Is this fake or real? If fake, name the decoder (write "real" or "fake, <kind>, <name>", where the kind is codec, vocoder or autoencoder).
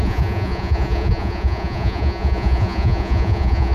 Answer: fake, vocoder, Vocos